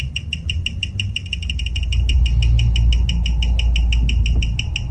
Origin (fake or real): real